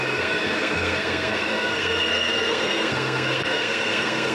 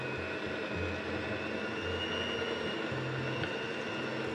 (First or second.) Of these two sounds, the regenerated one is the first